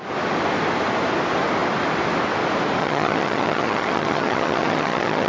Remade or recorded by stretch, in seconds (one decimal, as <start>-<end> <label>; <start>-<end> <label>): 0.0-2.8 recorded; 2.8-5.3 remade